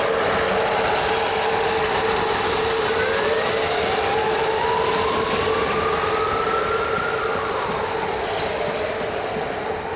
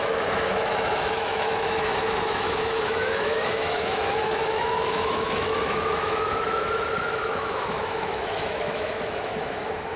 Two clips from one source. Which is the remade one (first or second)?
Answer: second